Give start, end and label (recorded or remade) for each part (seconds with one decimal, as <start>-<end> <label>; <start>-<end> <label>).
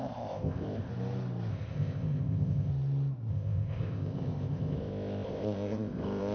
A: 0.0-0.9 remade; 0.9-1.5 recorded; 1.5-2.7 remade; 2.7-3.3 recorded; 3.3-6.3 remade